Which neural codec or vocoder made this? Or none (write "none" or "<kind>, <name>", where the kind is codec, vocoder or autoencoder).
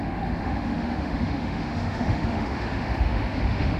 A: autoencoder, DAC-VAE